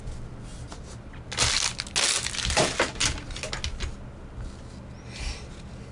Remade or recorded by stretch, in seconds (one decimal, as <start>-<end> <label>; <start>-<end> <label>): 0.0-5.9 recorded